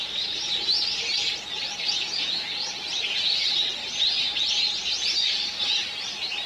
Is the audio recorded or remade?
recorded